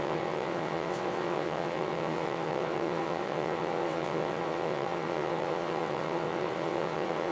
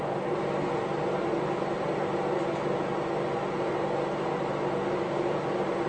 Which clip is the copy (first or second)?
first